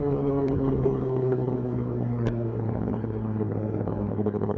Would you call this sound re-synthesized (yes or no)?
yes